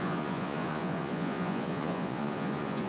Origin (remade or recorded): remade